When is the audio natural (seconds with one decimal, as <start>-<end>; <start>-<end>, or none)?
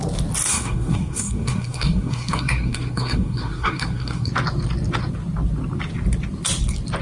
0.0-0.5; 4.3-7.0